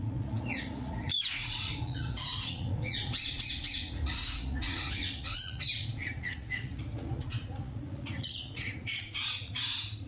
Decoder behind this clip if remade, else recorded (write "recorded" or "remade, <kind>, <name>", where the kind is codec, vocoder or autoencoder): remade, vocoder, Vocos